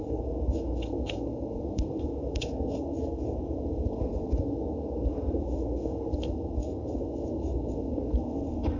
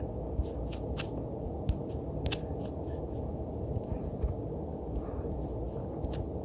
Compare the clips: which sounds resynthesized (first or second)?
first